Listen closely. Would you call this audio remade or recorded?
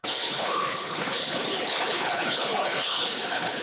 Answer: remade